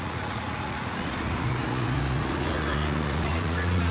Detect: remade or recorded remade